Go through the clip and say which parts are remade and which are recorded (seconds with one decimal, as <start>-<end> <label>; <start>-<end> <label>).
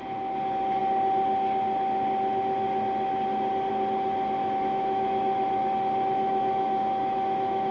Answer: 0.0-4.4 recorded; 4.4-7.7 remade